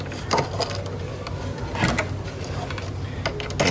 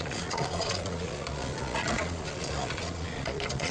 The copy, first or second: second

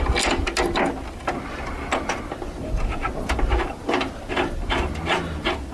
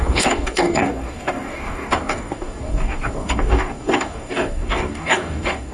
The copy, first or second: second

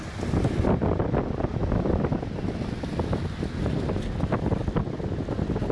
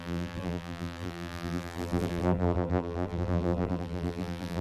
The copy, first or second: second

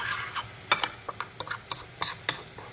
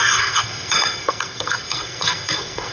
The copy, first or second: second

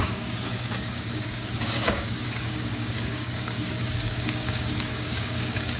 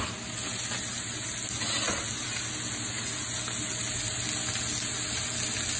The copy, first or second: first